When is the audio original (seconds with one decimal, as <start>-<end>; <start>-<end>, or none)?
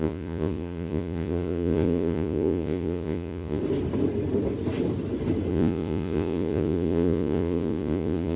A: 3.6-5.5